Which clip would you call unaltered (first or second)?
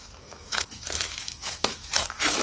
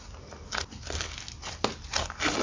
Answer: second